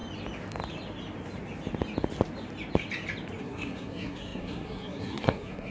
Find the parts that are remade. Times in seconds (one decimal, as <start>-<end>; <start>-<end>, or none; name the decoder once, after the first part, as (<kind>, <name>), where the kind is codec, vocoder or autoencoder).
3.4-5.7 (codec, SNAC)